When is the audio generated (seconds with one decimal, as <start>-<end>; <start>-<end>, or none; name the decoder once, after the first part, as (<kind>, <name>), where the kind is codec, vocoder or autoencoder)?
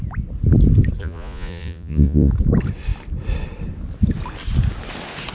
1.0-2.3 (vocoder, Vocos)